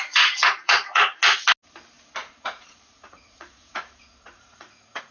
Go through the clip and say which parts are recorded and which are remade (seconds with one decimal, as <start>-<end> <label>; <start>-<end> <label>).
0.0-1.2 remade; 1.2-2.3 recorded; 2.3-5.1 remade